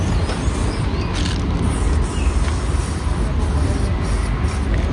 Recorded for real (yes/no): yes